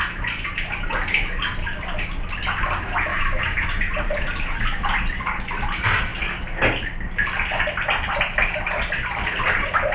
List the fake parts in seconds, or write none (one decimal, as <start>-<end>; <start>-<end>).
3.1-3.7